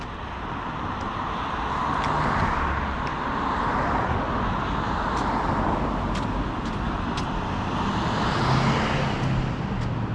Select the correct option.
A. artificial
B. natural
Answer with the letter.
B